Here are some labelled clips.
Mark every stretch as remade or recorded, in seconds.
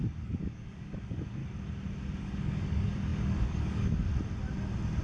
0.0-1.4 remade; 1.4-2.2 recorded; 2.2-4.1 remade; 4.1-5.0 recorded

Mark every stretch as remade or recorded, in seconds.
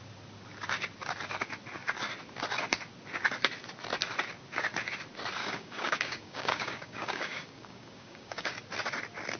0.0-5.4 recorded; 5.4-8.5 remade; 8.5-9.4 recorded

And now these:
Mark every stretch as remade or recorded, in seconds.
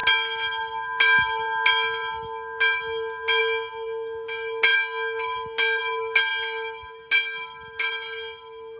0.0-8.8 recorded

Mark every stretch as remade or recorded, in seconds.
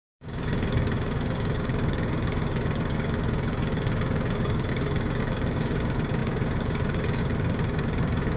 0.0-8.4 remade